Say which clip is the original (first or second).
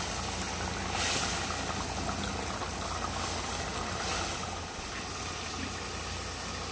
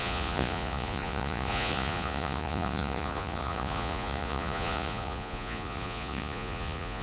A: first